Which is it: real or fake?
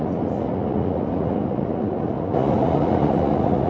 fake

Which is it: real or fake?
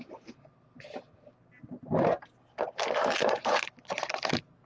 real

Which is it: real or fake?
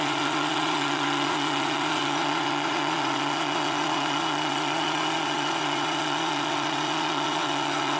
fake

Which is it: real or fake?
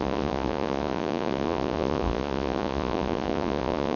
fake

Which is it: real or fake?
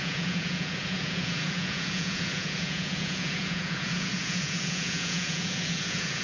fake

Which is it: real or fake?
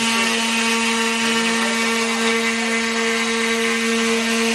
real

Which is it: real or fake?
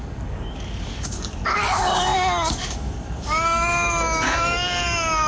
fake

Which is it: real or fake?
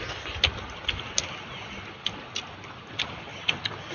real